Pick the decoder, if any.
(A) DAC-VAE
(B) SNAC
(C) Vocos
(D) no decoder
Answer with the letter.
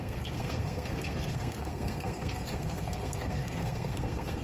B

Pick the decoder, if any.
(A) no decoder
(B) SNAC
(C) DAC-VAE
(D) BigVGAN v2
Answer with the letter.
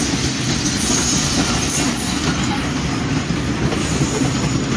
A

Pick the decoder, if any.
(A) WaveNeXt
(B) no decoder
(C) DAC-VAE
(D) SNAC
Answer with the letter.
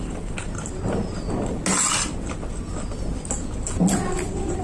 B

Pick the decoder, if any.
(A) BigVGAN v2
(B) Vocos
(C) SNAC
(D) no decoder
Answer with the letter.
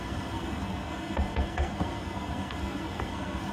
C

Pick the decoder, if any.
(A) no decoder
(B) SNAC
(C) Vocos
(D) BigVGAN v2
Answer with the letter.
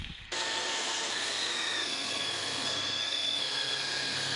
B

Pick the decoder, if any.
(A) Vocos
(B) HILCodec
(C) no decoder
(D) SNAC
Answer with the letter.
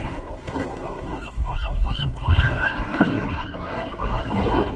D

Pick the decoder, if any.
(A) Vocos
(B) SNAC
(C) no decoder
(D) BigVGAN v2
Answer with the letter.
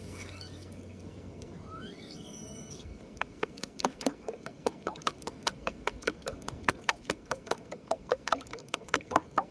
B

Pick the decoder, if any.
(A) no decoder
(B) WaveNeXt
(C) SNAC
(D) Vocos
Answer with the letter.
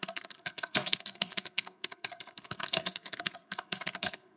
C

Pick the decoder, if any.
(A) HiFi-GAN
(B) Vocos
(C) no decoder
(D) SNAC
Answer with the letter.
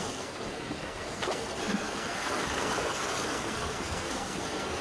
D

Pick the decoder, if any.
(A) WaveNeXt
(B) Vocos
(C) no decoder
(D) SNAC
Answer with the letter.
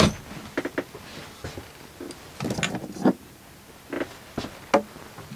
C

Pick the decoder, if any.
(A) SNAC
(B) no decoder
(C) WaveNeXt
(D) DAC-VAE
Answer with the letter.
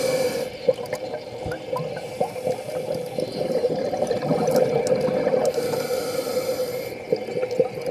B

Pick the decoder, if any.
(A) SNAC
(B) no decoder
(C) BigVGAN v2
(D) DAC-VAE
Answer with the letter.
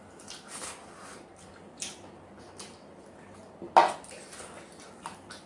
B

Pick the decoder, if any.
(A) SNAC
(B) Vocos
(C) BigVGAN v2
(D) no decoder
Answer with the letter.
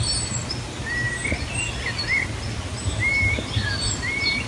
D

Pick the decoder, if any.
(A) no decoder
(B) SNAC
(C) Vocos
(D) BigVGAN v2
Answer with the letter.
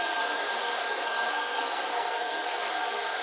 B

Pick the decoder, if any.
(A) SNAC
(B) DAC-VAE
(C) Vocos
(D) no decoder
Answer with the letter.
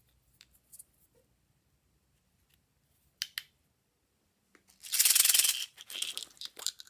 D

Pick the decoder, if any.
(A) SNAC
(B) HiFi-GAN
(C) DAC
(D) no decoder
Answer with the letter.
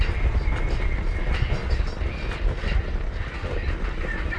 D